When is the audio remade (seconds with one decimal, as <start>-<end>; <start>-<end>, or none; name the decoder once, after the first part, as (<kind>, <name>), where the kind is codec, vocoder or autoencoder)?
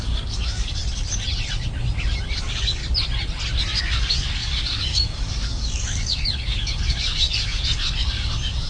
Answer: 0.0-0.8 (codec, DAC); 2.4-2.8; 3.8-8.7